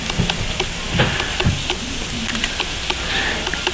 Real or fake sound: real